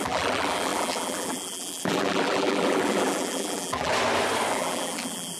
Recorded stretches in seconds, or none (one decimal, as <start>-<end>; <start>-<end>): 3.9-4.5